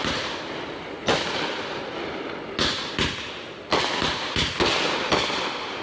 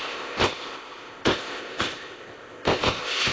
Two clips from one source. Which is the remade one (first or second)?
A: second